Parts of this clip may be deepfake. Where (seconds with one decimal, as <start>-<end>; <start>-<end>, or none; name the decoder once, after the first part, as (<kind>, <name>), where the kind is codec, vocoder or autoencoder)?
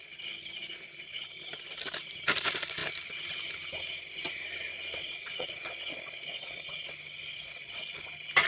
5.0-6.8 (vocoder, Vocos); 7.3-7.8